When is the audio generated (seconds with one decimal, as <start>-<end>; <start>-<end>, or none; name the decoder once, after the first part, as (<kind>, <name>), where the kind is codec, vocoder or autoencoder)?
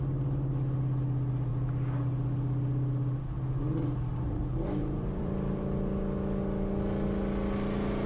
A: 4.8-5.6 (vocoder, BigVGAN v2)